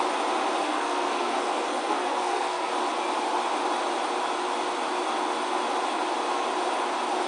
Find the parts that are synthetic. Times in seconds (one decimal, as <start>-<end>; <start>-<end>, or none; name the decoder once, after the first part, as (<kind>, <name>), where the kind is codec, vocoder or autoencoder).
0.6-2.7 (codec, SNAC)